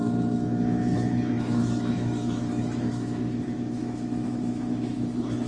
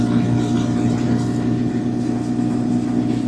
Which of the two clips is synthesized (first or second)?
first